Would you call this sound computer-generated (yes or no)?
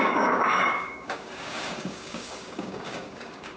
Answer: yes